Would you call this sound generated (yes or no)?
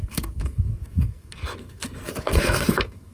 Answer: yes